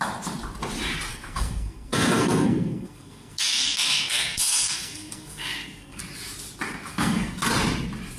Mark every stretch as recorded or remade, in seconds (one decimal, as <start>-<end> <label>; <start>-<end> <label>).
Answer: 0.0-1.1 recorded; 1.1-6.0 remade; 6.0-6.9 recorded; 6.9-7.5 remade; 7.5-8.2 recorded